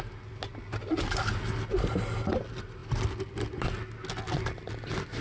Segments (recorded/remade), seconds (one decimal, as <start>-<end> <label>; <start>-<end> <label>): 0.0-5.2 recorded